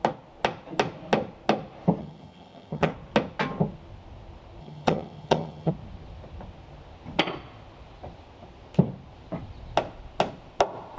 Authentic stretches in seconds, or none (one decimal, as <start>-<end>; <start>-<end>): 0.0-2.0; 2.9-4.6; 5.7-11.0